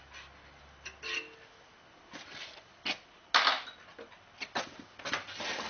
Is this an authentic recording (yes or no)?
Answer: yes